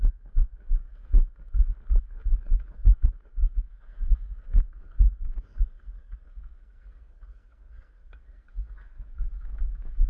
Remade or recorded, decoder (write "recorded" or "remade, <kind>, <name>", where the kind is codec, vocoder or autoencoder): remade, codec, SNAC